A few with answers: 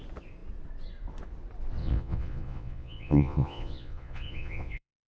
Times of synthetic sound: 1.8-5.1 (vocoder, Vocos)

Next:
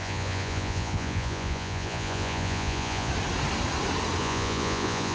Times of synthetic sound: 0.0-3.1 (vocoder, Vocos); 4.2-5.1

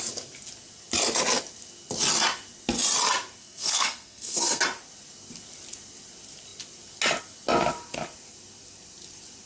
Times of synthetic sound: 3.4-4.6 (codec, SNAC)

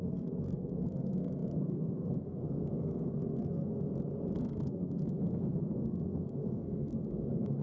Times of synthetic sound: 0.0-3.9 (codec, SNAC); 4.4-7.6

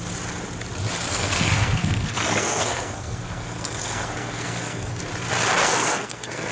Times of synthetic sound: 1.1-5.0 (codec, SNAC); 5.6-6.5

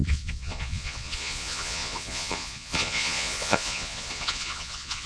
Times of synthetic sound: 0.0-5.1 (vocoder, Vocos)

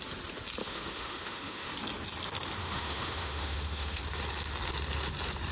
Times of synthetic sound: 0.6-1.7 (autoencoder, DAC-VAE); 2.6-4.0

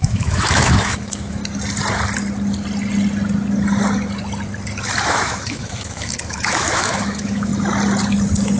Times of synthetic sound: 0.0-1.4 (autoencoder, DAC-VAE); 5.1-7.5